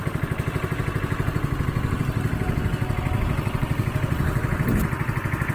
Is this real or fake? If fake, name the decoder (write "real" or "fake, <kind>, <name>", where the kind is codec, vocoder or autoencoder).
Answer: real